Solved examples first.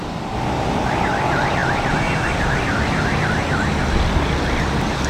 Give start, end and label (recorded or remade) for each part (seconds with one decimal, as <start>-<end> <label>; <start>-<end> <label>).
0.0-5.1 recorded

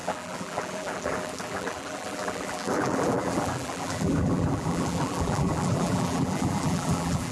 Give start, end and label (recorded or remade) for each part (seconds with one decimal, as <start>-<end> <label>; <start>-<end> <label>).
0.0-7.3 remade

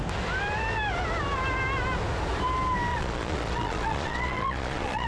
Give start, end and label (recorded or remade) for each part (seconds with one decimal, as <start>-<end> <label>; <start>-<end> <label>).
0.0-2.9 recorded; 2.9-5.1 remade

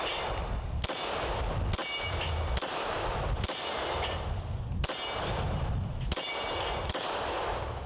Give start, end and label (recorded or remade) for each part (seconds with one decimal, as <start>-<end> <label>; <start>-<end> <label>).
0.0-7.9 recorded

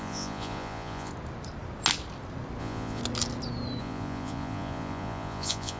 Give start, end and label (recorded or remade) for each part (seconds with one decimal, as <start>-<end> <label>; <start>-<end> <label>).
0.0-1.1 remade; 1.1-2.6 recorded; 2.6-3.0 remade; 3.0-3.8 recorded; 3.8-5.8 remade